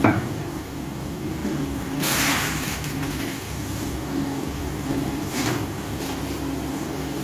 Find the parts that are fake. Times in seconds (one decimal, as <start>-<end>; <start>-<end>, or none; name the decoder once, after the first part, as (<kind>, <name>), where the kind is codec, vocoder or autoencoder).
0.0-6.2 (codec, DAC); 6.7-7.2